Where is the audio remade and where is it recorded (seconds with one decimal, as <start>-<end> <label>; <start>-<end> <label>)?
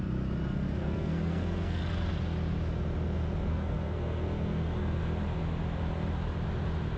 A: 0.0-0.8 recorded; 0.8-1.8 remade; 1.8-3.5 recorded; 3.5-5.0 remade; 5.0-7.0 recorded